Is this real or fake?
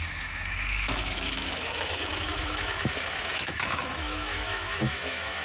fake